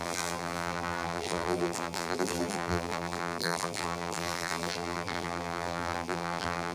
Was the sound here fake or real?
fake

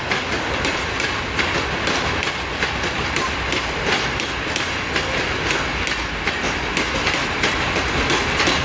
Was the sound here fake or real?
real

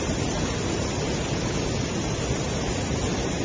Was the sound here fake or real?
real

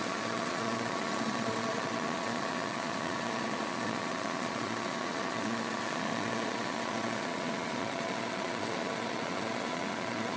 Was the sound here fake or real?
fake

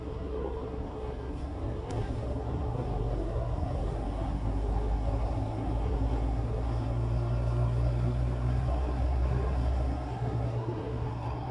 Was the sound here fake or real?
fake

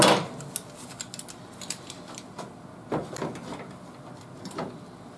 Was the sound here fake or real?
real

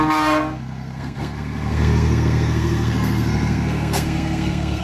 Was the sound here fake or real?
fake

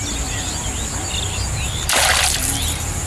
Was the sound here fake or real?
real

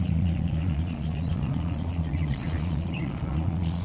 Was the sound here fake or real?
fake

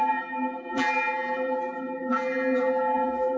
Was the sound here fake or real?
fake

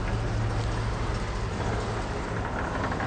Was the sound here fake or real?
real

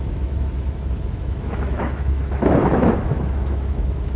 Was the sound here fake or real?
fake